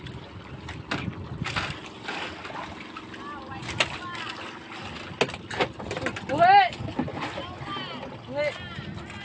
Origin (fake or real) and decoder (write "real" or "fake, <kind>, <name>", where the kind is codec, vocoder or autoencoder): real